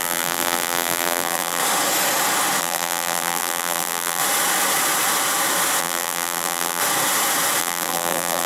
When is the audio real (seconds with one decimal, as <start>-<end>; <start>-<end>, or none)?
1.6-2.6; 4.2-5.8; 6.8-7.6